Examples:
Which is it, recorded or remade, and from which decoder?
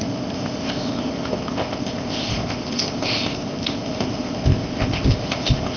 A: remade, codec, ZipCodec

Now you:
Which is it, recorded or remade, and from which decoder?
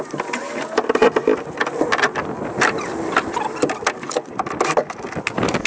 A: recorded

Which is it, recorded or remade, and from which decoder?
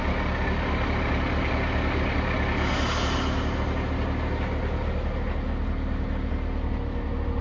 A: recorded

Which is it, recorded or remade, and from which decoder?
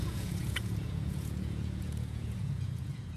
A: remade, vocoder, Vocos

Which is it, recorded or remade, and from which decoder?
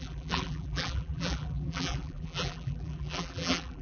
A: remade, vocoder, BigVGAN v2